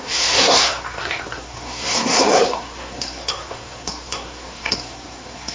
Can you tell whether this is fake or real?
fake